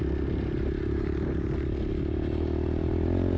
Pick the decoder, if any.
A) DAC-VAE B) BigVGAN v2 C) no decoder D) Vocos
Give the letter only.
C